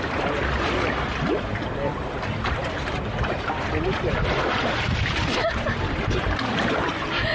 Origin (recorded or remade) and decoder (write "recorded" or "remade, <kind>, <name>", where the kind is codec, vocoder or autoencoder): recorded